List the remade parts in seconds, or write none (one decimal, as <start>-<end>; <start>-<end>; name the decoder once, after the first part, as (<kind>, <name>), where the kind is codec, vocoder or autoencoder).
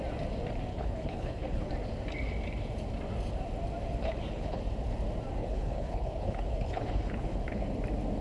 0.7-1.7 (codec, HILCodec); 4.0-4.6; 5.4-7.6